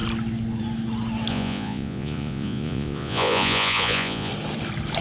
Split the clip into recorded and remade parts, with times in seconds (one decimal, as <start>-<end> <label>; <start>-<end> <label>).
0.0-1.3 recorded; 1.3-4.3 remade; 4.3-5.0 recorded